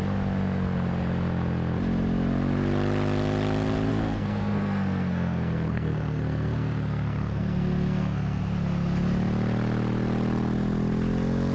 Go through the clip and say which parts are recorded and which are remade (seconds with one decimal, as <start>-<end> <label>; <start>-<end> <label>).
0.0-3.9 recorded; 3.9-8.4 remade; 8.4-11.5 recorded